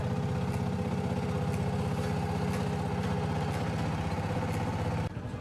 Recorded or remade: recorded